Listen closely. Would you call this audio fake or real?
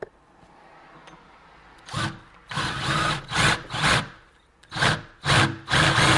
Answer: real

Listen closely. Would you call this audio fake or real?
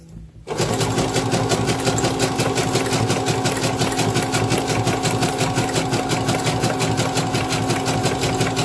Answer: real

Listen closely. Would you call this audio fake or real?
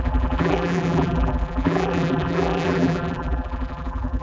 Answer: fake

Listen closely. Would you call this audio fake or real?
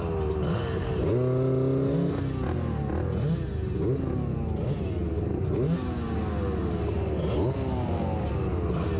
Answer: real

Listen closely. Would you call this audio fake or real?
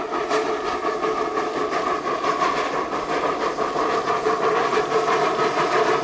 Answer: real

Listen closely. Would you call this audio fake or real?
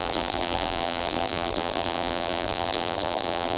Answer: fake